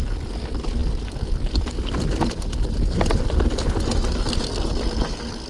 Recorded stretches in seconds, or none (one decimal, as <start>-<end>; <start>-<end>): 0.0-5.5